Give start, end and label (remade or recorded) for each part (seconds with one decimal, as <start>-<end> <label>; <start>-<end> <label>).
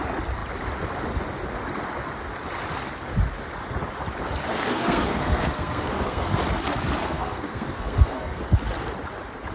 0.0-4.5 recorded; 4.5-6.4 remade; 6.4-7.0 recorded; 7.0-8.4 remade; 8.4-9.5 recorded